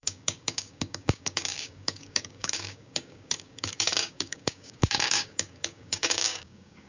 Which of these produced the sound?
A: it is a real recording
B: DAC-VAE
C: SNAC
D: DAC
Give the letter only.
D